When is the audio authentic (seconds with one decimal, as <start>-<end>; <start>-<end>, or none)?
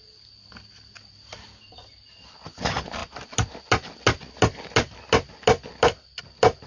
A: 0.0-6.7